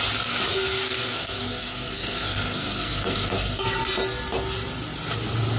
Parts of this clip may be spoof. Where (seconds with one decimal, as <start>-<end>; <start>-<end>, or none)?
0.5-3.8

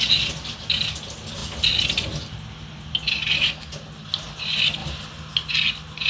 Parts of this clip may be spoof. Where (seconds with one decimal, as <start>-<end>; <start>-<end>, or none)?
none

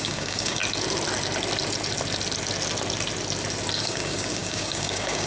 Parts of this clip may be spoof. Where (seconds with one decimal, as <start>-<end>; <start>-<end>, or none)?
0.0-0.6; 3.8-5.3

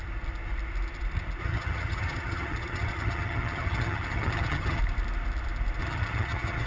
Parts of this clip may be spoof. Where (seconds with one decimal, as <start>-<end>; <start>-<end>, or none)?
1.4-4.8; 5.8-6.7

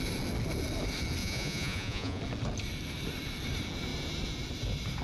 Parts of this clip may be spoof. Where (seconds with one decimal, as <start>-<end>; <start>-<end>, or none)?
1.2-2.2

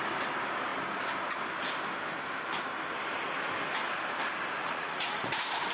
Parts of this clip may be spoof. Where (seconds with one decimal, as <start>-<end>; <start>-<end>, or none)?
4.6-5.3

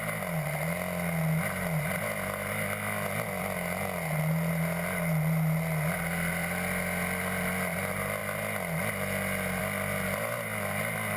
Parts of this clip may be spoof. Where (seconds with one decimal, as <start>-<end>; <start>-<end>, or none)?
none